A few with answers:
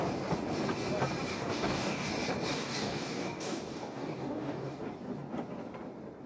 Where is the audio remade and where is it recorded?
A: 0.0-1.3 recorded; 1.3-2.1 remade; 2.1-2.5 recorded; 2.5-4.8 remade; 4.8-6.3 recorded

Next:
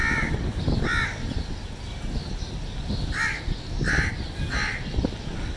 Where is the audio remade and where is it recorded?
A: 0.0-3.4 recorded; 3.4-5.6 remade

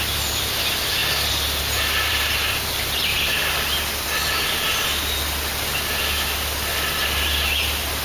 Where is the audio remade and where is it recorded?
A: 0.0-8.0 recorded

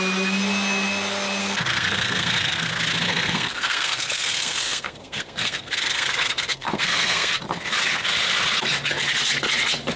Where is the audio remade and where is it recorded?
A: 0.0-1.4 recorded; 1.4-2.7 remade; 2.7-3.1 recorded; 3.1-7.3 remade; 7.3-10.0 recorded

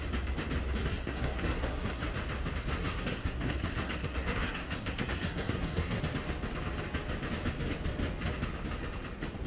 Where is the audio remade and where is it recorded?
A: 0.0-0.8 recorded; 0.8-2.1 remade; 2.1-2.7 recorded; 2.7-6.0 remade; 6.0-9.5 recorded

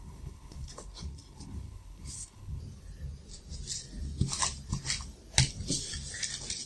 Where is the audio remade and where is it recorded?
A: 0.0-2.6 remade; 2.6-6.7 recorded